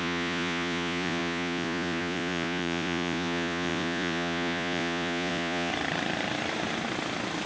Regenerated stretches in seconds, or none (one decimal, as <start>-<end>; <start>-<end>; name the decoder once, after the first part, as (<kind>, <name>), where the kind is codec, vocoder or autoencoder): 0.0-5.7 (vocoder, Vocos)